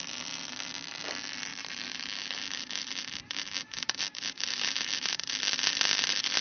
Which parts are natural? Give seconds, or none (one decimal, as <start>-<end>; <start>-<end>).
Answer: 0.0-1.5; 5.3-6.4

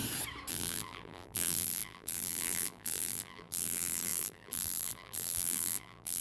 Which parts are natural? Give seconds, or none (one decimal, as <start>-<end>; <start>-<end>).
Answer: 0.0-0.5